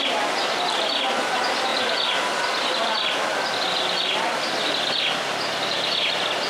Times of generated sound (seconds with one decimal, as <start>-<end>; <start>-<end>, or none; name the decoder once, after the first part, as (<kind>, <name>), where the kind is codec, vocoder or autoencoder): none